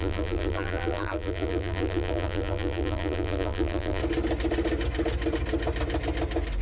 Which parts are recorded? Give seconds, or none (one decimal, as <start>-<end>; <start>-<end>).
4.0-6.6